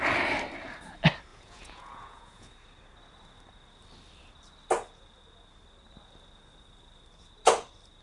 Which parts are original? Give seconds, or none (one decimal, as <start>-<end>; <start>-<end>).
0.0-1.3; 2.5-8.0